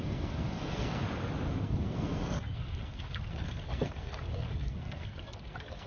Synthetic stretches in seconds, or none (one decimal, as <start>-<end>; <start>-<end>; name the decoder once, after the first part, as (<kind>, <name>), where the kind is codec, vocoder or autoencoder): 0.0-1.0 (codec, SNAC); 1.5-5.9